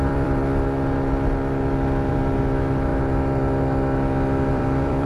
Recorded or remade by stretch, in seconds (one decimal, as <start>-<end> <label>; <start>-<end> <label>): 0.0-0.4 remade; 0.4-2.1 recorded; 2.1-2.9 remade; 2.9-4.5 recorded; 4.5-5.1 remade